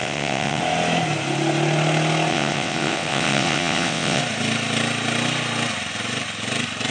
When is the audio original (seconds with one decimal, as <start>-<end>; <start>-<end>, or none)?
0.6-2.3; 4.2-6.9